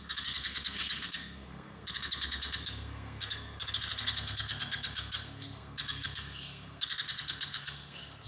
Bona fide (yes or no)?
no